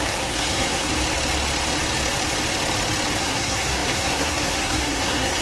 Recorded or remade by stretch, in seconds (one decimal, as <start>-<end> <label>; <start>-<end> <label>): 0.0-0.9 remade; 0.9-3.2 recorded; 3.2-5.4 remade